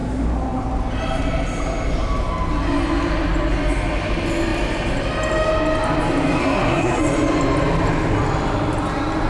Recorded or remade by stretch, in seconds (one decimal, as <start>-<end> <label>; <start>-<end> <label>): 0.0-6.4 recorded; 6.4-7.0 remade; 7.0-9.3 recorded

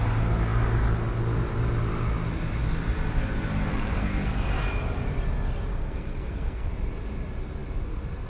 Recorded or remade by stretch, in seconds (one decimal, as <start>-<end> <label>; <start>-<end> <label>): 0.0-3.7 recorded; 3.7-4.3 remade; 4.3-5.7 recorded; 5.7-6.7 remade; 6.7-8.3 recorded

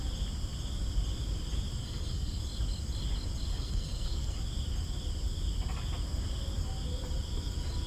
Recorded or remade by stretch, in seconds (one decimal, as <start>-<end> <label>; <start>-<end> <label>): 0.0-1.8 recorded; 1.8-2.4 remade; 2.4-3.5 recorded; 3.5-4.4 remade; 4.4-7.9 recorded